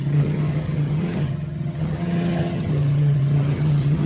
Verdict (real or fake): fake